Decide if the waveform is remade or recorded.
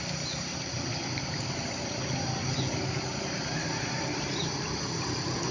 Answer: recorded